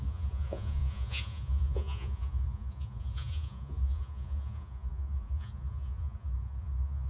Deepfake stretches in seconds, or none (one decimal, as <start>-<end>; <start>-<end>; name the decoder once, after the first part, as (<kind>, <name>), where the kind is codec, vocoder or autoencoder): 0.0-7.1 (vocoder, Vocos)